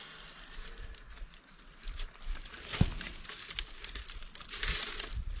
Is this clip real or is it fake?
real